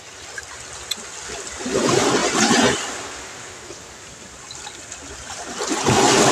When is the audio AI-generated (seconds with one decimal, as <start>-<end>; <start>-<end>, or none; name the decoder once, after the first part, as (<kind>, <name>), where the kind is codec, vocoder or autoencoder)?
0.0-2.2 (vocoder, BigVGAN v2)